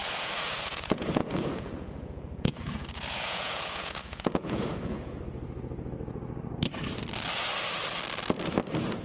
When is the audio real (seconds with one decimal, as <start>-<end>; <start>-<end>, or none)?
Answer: 5.2-9.0